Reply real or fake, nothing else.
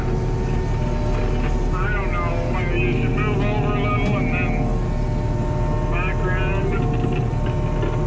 real